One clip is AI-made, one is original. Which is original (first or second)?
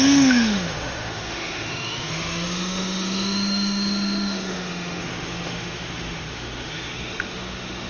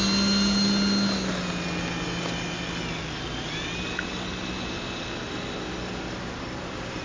second